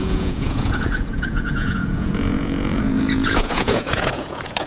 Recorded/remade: remade